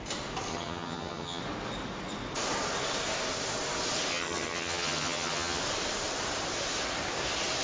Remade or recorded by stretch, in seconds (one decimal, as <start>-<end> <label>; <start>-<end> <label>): 0.0-0.5 recorded; 0.5-1.4 remade; 1.4-4.1 recorded; 4.1-5.6 remade; 5.6-7.6 recorded